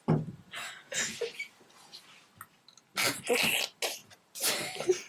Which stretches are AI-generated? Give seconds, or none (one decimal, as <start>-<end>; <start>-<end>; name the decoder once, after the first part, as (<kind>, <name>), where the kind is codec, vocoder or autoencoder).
4.0-5.1 (vocoder, BigVGAN v2)